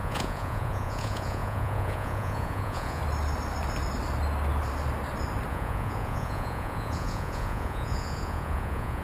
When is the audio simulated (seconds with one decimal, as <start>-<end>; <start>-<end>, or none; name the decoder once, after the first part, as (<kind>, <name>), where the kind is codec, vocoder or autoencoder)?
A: 0.0-3.0 (vocoder, Vocos); 5.5-9.0